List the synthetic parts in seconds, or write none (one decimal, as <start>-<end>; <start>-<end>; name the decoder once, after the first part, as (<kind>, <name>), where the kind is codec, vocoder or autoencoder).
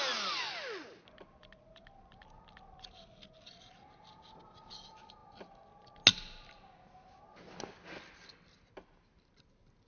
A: none